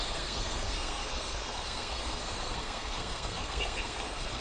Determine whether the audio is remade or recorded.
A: remade